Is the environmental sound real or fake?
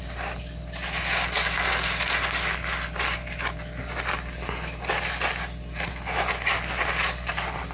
real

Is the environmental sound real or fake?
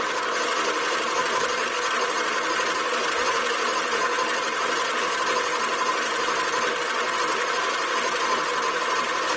fake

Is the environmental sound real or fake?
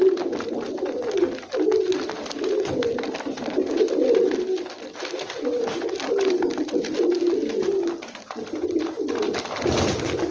real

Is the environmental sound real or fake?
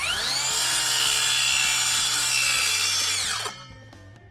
real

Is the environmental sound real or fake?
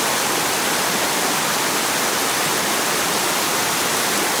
real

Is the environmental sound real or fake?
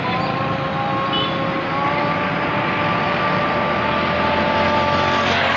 real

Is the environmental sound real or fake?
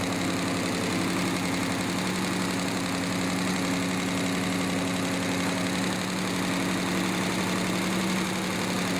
real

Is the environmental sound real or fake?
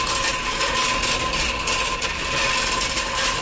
real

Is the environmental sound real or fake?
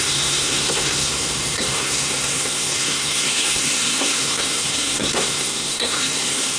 fake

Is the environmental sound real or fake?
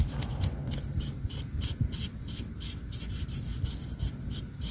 real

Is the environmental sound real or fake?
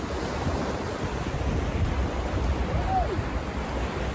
real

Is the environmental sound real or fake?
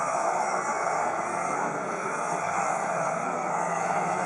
fake